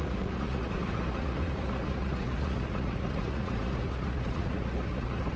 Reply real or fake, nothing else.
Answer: fake